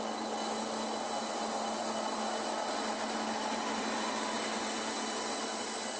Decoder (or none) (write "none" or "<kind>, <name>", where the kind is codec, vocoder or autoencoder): none